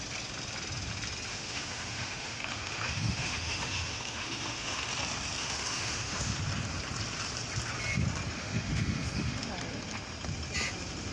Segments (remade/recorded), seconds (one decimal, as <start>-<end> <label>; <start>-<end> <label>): 0.0-1.3 recorded; 1.3-4.9 remade; 4.9-5.4 recorded; 5.4-6.4 remade; 6.4-8.4 recorded; 8.4-9.5 remade; 9.5-11.1 recorded